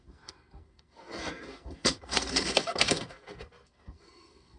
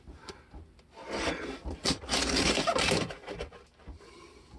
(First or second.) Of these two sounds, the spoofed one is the first